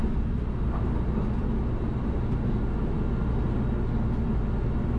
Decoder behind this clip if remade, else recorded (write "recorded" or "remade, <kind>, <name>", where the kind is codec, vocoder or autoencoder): recorded